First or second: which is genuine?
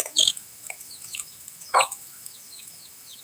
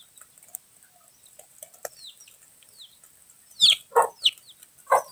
second